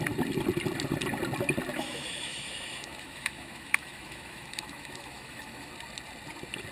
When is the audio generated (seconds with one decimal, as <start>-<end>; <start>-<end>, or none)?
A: 1.7-5.7